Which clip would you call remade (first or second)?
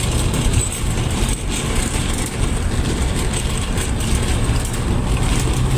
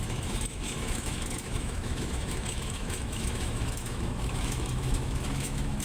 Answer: second